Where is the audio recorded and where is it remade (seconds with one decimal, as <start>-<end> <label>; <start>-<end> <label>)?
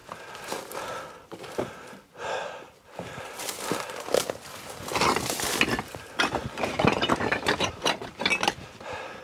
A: 0.0-6.4 recorded; 6.4-8.1 remade; 8.1-9.2 recorded